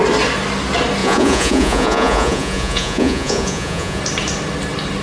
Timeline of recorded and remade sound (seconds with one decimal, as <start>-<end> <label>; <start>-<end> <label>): 0.0-1.0 recorded; 1.0-4.0 remade; 4.0-5.0 recorded